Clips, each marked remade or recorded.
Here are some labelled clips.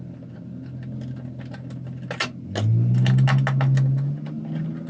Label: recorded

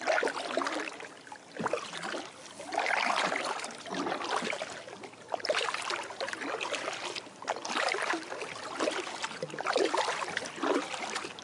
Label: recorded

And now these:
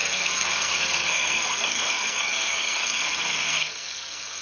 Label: remade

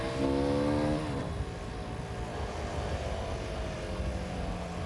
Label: recorded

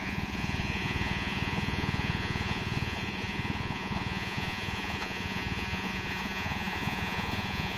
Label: remade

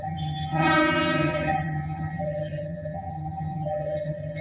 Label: remade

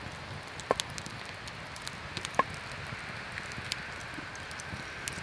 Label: recorded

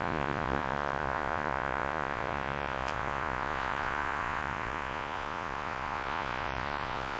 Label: remade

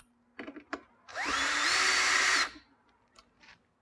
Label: remade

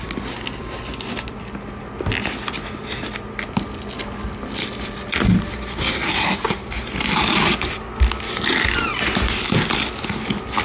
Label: recorded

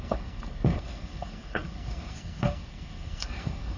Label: remade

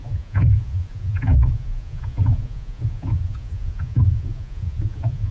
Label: remade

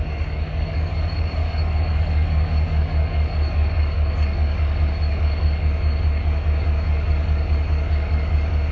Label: remade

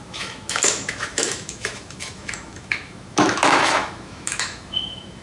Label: remade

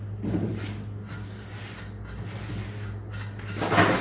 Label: recorded